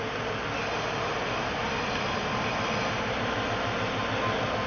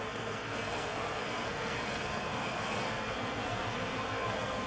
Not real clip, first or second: second